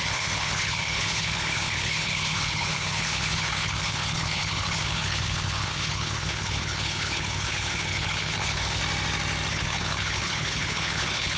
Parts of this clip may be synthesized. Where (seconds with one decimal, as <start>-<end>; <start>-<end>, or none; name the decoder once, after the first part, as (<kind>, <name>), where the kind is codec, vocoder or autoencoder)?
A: 0.0-8.8 (codec, HILCodec); 9.5-11.4